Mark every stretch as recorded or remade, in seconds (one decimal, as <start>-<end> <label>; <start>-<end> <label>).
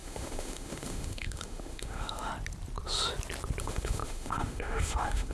0.0-2.3 remade; 2.3-3.6 recorded; 3.6-5.3 remade